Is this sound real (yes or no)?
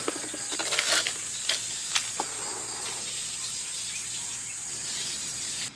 yes